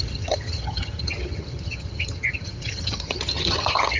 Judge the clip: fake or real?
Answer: fake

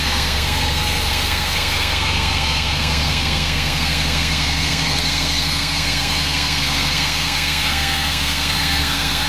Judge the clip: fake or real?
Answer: fake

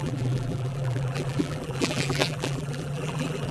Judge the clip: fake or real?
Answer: fake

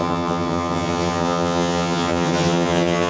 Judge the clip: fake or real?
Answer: fake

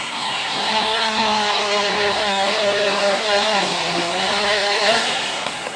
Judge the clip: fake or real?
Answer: fake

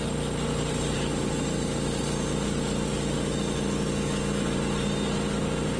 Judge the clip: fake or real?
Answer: real